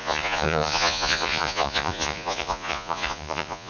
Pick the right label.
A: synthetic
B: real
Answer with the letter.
A